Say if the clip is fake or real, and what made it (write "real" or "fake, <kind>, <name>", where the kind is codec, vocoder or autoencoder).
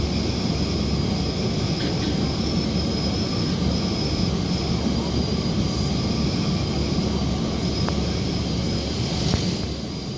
real